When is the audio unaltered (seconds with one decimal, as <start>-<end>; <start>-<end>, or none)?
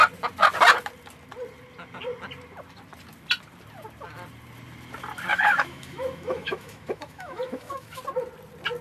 0.0-5.3; 8.0-8.8